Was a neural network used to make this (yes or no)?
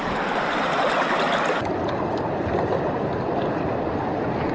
no